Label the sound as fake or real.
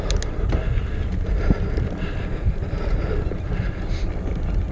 real